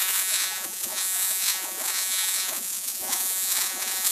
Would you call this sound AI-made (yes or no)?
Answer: yes